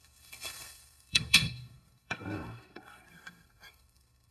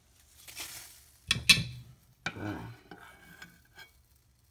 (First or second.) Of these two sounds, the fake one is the first